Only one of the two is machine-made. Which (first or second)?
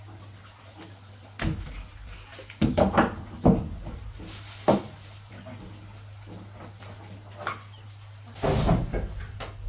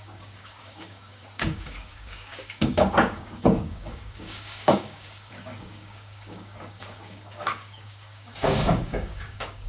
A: second